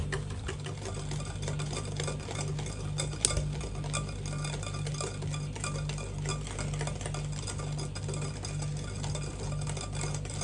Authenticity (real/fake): real